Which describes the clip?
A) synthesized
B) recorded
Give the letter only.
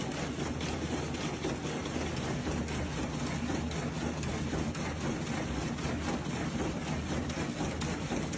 B